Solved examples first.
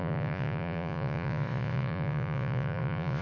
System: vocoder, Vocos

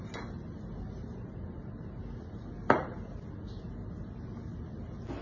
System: none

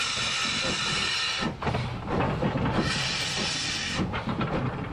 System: none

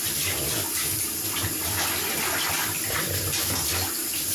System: none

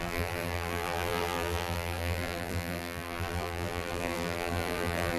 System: vocoder, BigVGAN v2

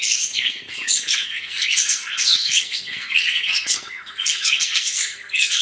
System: codec, SNAC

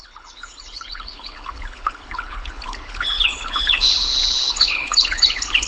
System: codec, HILCodec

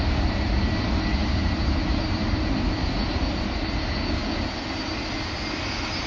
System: none